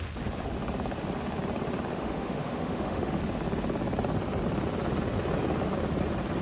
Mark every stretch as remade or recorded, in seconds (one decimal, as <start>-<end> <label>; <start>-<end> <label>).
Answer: 0.0-1.9 recorded; 1.9-3.2 remade; 3.2-6.4 recorded